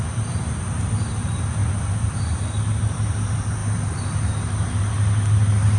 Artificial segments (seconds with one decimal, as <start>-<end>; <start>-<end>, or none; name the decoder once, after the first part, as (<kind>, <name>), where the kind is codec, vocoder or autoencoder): none